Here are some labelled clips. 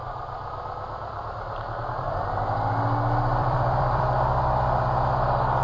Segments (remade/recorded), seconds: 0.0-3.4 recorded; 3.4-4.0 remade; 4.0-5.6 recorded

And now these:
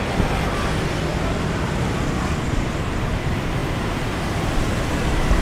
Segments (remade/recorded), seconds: 0.0-5.4 recorded

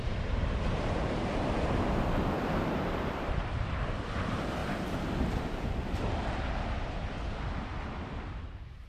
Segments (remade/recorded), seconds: 0.0-4.6 remade; 4.6-7.3 recorded; 7.3-7.7 remade; 7.7-8.3 recorded; 8.3-8.9 remade

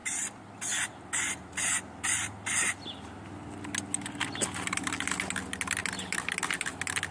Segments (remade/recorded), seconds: 0.0-7.1 recorded

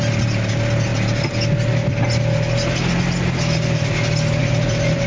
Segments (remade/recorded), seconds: 0.0-4.4 recorded; 4.4-5.1 remade

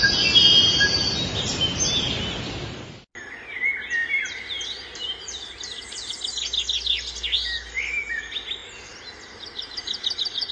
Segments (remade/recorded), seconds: 0.0-4.0 recorded; 4.0-6.2 remade; 6.2-8.6 recorded; 8.6-10.5 remade

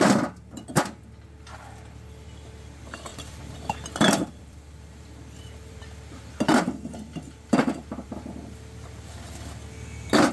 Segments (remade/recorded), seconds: 0.0-3.1 recorded; 3.1-8.1 remade; 8.1-10.3 recorded